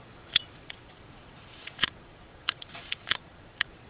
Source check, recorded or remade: remade